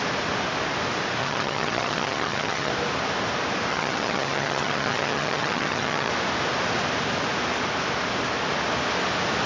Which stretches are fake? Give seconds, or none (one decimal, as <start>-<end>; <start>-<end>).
1.2-2.7; 3.7-6.1